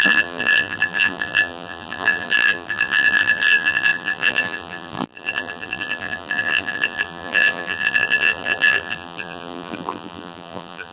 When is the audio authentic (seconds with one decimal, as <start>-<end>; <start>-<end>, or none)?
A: none